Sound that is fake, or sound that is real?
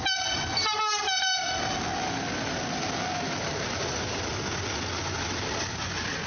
real